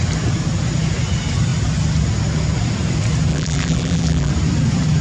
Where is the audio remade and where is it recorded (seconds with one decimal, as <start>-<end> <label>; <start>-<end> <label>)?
0.0-3.3 recorded; 3.3-4.3 remade; 4.3-5.0 recorded